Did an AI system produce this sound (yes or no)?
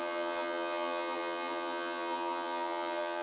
yes